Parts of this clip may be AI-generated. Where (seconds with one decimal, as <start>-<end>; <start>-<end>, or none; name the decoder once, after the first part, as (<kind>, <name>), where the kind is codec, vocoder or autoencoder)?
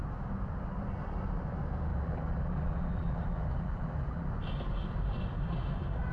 1.9-4.3 (vocoder, BigVGAN v2)